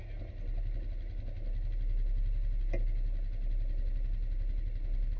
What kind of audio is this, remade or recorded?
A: recorded